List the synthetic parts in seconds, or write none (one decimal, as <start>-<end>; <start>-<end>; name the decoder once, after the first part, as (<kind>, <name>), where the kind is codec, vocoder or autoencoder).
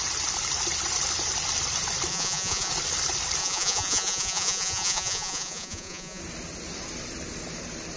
2.1-2.7 (vocoder, Vocos); 3.4-6.2